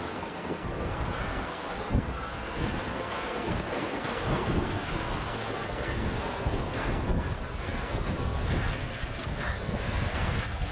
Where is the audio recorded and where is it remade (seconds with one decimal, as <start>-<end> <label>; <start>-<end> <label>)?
0.0-10.7 remade